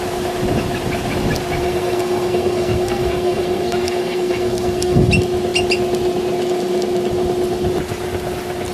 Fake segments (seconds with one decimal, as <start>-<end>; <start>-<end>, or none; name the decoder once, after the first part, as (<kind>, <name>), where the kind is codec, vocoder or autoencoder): 1.6-5.1 (codec, SNAC)